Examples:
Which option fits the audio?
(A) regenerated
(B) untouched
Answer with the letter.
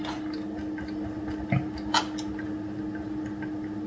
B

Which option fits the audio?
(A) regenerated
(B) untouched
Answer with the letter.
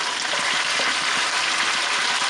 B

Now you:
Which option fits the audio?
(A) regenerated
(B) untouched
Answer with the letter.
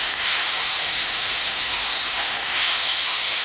A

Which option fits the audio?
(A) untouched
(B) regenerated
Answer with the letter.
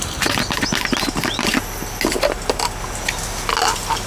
A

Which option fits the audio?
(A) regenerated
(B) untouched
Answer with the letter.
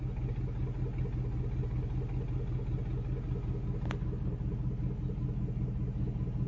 B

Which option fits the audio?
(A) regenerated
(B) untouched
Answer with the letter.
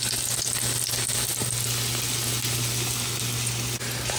B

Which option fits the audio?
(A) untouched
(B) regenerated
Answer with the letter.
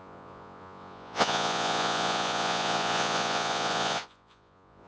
B